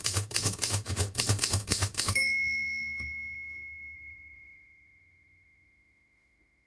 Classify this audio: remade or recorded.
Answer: remade